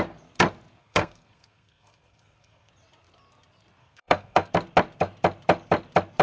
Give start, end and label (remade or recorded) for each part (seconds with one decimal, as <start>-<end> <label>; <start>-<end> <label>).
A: 0.0-0.8 recorded; 0.8-2.7 remade; 2.7-3.8 recorded; 3.8-4.5 remade; 4.5-6.2 recorded